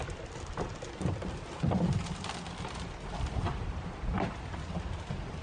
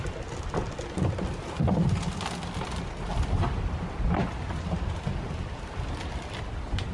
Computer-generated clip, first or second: first